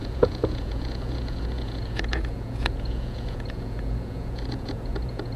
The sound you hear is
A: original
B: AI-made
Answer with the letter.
B